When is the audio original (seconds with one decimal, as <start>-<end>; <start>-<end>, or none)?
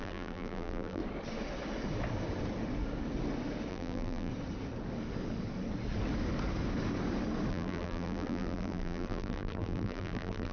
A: 1.0-3.7; 4.3-7.5